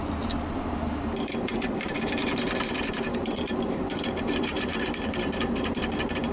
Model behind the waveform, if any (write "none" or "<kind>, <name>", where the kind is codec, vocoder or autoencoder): vocoder, BigVGAN v2